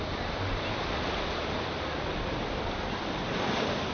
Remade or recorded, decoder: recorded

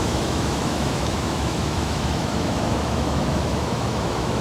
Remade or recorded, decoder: remade, autoencoder, DAC-VAE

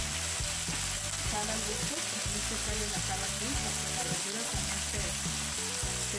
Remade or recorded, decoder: recorded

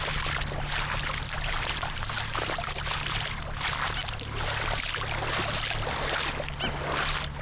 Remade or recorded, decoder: recorded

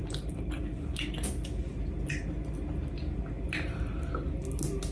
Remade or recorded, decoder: recorded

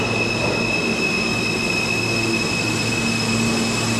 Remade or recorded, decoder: recorded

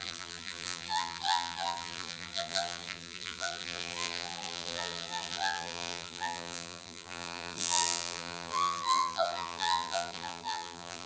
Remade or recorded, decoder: remade, vocoder, BigVGAN v2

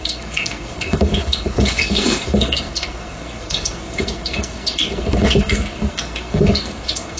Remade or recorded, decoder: remade, codec, SNAC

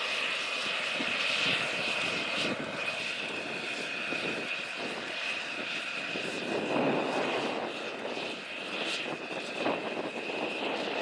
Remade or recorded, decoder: recorded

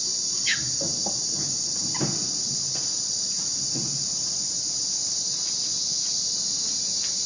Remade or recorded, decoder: recorded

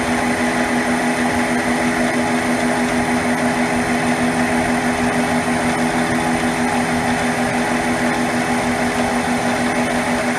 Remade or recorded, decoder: recorded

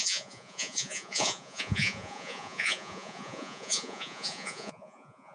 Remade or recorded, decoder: remade, vocoder, Vocos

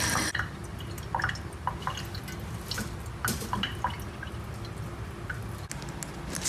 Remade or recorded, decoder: recorded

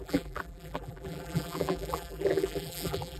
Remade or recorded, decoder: remade, vocoder, BigVGAN v2